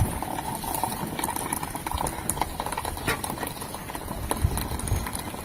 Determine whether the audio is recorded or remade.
recorded